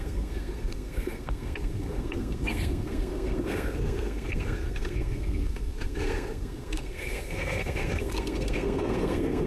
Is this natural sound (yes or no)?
no